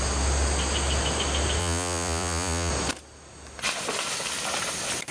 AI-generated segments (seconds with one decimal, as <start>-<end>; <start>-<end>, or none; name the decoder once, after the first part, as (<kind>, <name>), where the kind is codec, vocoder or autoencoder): 1.6-2.7 (vocoder, Vocos)